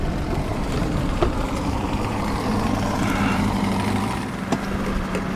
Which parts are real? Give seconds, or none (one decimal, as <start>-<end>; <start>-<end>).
0.0-0.5; 3.7-5.4